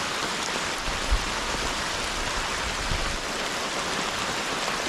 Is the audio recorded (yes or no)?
yes